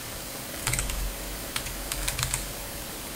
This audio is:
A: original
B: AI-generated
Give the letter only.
B